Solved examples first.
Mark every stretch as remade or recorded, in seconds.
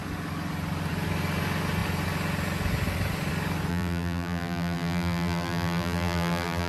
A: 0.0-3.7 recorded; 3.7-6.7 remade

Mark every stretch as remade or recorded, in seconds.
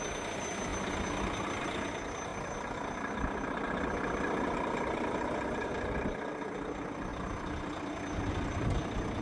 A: 0.0-9.2 recorded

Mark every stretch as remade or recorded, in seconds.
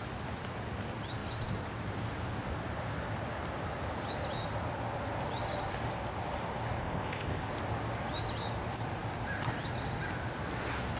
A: 0.0-6.8 recorded; 6.8-7.5 remade; 7.5-11.0 recorded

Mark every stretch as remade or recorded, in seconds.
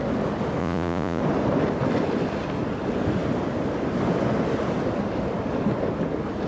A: 0.0-0.6 recorded; 0.6-1.2 remade; 1.2-6.5 recorded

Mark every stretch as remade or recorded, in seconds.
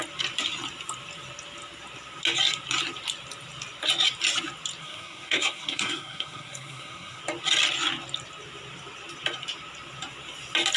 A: 0.0-4.8 recorded; 4.8-7.2 remade; 7.2-10.8 recorded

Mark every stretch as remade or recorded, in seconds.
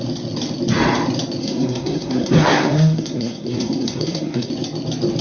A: 0.0-1.4 recorded; 1.4-4.5 remade; 4.5-5.2 recorded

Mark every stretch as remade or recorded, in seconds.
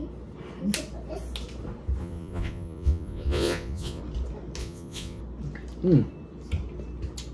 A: 0.0-2.0 recorded; 2.0-4.0 remade; 4.0-4.6 recorded; 4.6-5.2 remade; 5.2-7.3 recorded